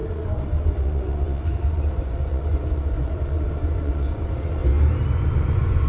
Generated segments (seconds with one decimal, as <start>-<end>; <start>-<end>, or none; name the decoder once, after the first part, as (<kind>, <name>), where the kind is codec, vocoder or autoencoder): 0.0-4.6 (vocoder, Vocos); 5.2-5.9

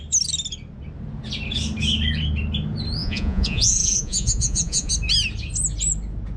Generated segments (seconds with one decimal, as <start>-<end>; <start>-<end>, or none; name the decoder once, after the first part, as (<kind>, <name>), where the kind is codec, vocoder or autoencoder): 3.0-4.9 (vocoder, Vocos)